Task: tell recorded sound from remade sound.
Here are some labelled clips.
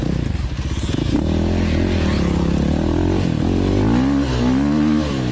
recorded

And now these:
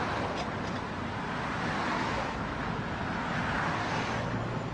recorded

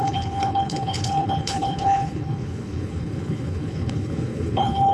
remade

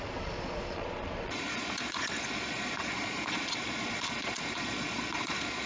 remade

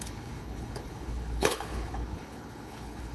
remade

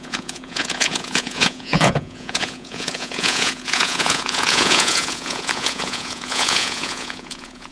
remade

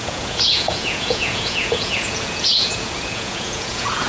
remade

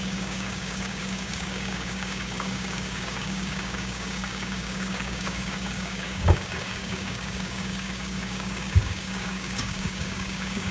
remade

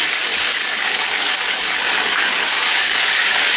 remade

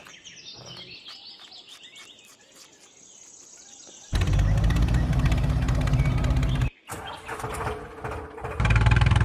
recorded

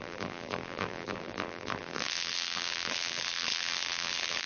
remade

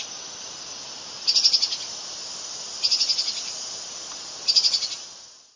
recorded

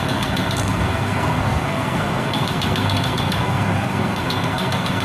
remade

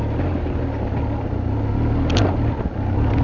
recorded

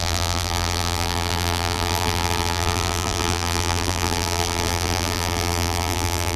remade